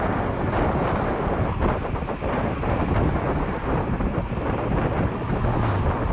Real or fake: real